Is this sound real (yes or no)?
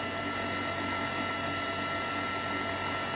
yes